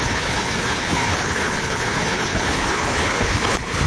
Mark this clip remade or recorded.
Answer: remade